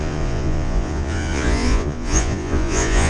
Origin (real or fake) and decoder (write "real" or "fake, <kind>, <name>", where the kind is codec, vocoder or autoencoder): fake, vocoder, Vocos